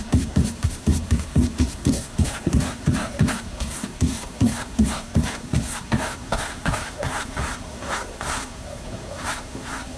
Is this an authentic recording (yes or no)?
no